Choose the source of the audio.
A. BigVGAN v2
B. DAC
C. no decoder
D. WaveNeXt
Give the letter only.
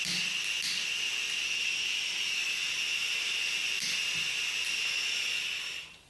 C